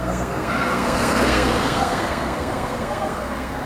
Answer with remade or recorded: remade